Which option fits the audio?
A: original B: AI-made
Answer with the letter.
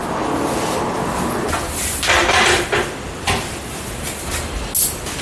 A